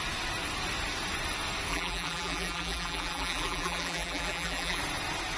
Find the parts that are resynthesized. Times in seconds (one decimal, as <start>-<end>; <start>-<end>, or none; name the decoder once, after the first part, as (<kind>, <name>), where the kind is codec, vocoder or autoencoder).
1.7-4.8 (vocoder, BigVGAN v2)